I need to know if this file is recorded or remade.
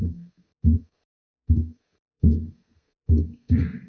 remade